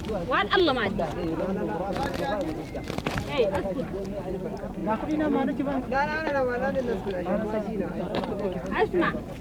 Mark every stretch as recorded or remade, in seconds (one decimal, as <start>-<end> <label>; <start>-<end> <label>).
0.0-9.4 remade